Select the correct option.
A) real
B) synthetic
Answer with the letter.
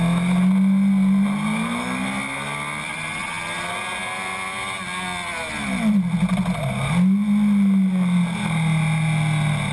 A